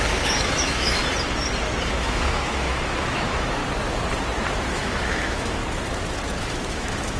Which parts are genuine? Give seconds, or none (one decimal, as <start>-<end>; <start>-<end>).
1.0-2.0; 3.6-4.7; 5.6-6.4